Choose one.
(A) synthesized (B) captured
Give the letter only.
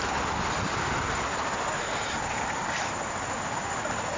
B